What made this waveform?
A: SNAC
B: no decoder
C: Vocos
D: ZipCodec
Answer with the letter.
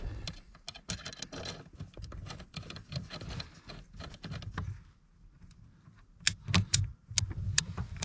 B